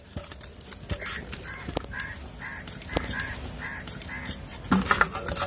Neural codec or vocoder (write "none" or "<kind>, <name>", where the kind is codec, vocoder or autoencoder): none